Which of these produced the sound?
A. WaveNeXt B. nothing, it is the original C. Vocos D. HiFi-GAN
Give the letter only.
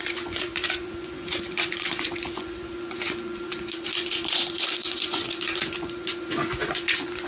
C